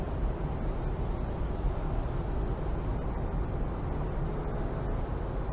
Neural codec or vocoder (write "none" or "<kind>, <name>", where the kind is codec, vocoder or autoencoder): none